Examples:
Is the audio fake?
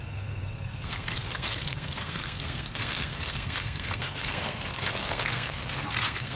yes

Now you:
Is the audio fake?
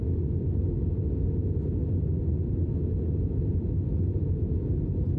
no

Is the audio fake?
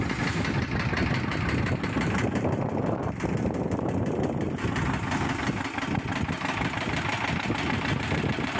no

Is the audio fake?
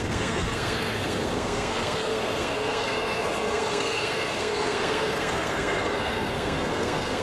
yes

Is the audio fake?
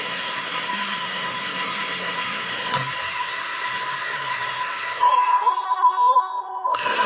yes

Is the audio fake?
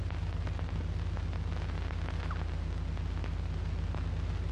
no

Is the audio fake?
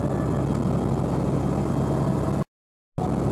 no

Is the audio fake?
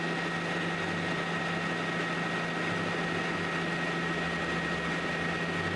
no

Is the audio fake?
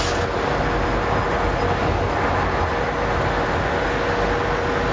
no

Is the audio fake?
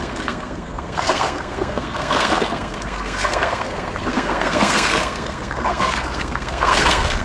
yes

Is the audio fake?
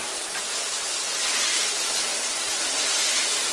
no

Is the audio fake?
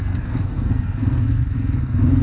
yes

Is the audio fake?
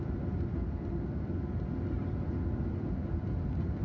no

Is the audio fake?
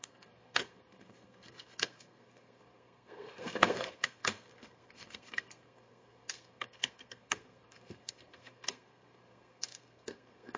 yes